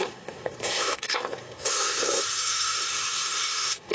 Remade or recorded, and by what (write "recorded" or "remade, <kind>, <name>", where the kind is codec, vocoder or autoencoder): remade, codec, SNAC